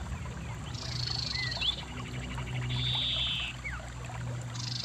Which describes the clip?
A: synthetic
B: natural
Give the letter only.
B